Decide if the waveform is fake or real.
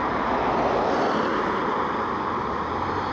real